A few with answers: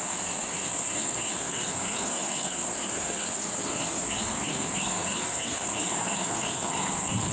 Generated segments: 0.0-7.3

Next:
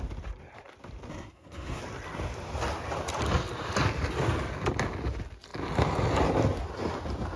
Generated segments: 1.1-1.8